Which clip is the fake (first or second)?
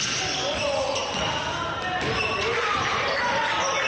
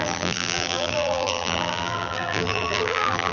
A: second